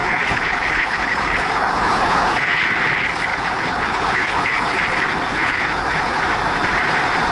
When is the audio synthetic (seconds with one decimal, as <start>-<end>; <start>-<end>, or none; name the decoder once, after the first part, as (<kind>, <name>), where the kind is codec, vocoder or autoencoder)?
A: 0.0-2.7 (codec, HILCodec); 3.3-4.8; 5.3-6.2

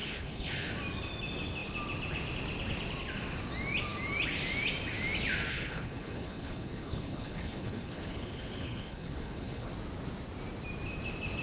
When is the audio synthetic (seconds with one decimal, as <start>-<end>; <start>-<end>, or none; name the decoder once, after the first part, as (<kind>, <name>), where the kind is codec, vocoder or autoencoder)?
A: 0.0-0.7 (codec, HILCodec); 5.5-9.7

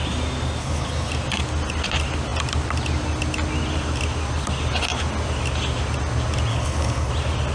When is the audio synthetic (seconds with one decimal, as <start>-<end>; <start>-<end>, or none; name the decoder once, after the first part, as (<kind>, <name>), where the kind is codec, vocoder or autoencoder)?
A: 0.6-1.1 (codec, HILCodec); 6.5-7.1

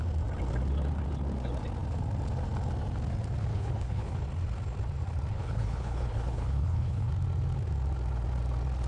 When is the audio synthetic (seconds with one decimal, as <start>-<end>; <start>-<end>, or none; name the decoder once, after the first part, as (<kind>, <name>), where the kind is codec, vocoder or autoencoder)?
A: 3.5-4.2 (codec, HILCodec); 5.3-7.1